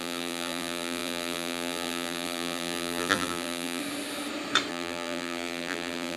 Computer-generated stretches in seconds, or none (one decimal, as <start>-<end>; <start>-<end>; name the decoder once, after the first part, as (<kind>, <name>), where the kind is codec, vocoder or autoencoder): 0.0-3.8 (vocoder, BigVGAN v2); 4.7-6.2